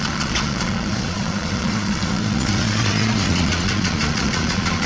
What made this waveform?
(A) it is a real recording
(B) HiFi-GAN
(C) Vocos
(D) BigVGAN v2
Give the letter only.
C